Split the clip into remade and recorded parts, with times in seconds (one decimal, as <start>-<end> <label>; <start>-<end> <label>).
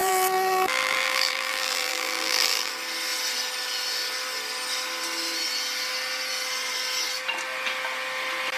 0.0-2.7 remade; 2.7-8.6 recorded